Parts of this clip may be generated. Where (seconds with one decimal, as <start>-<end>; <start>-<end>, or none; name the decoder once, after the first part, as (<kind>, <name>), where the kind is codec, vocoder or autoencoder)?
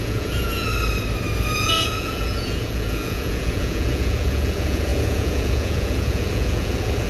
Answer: 0.0-0.7 (vocoder, Vocos); 1.4-7.1